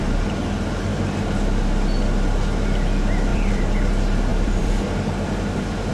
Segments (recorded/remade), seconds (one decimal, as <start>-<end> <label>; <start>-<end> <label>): 0.0-3.3 recorded; 3.3-3.9 remade; 3.9-4.3 recorded; 4.3-5.9 remade